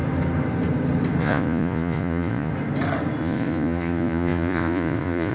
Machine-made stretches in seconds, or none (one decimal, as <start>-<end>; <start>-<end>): 1.2-2.5; 3.2-5.3